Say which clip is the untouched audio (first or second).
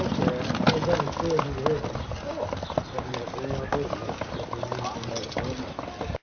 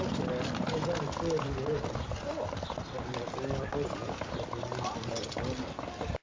first